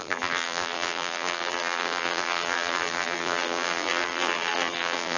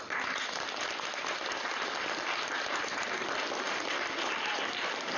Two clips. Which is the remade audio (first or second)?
first